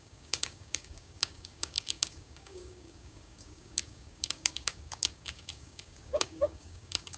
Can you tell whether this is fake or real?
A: fake